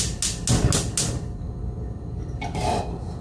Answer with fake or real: real